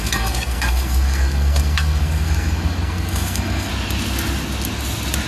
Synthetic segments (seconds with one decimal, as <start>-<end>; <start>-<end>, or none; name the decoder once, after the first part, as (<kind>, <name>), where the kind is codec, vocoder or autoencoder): 0.0-3.7 (codec, SNAC)